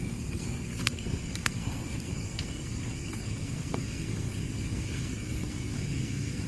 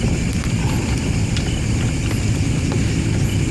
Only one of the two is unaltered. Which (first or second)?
second